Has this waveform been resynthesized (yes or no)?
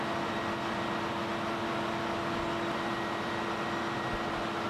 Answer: no